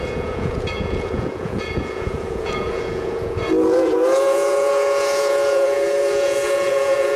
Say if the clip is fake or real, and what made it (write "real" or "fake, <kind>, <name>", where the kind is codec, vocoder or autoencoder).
fake, vocoder, Vocos